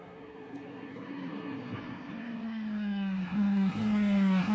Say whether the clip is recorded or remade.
remade